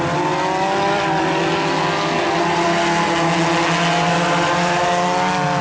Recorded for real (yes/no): yes